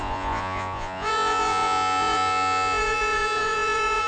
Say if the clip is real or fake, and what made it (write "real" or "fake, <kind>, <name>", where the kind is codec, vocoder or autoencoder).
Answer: fake, vocoder, Vocos